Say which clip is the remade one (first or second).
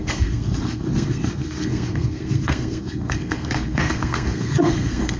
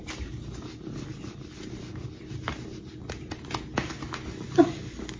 first